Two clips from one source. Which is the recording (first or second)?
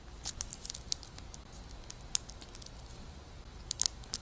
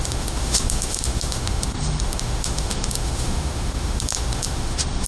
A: first